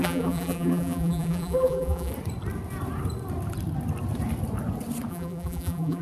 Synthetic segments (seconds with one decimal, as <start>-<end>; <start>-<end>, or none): 0.0-2.1; 5.1-6.0